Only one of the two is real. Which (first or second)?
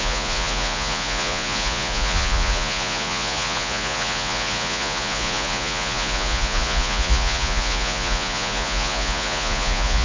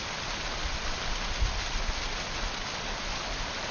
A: second